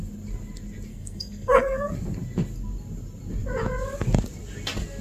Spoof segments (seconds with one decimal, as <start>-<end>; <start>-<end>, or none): 0.9-1.9